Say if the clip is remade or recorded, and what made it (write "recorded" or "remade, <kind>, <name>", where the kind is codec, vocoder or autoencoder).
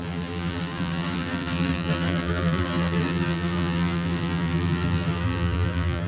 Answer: remade, vocoder, BigVGAN v2